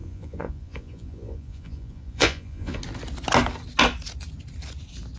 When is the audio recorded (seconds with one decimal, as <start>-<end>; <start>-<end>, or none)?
2.8-5.2